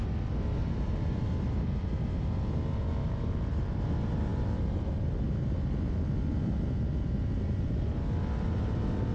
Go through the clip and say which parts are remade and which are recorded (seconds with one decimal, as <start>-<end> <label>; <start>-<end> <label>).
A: 0.0-0.6 recorded; 0.6-1.2 remade; 1.2-3.0 recorded; 3.0-3.7 remade; 3.7-9.1 recorded